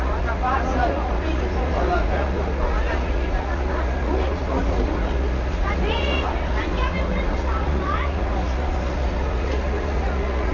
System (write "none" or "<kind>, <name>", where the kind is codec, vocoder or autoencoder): vocoder, Vocos